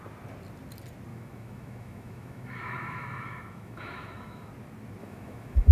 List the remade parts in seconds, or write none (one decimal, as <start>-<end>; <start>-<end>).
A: 1.1-4.5; 5.0-5.7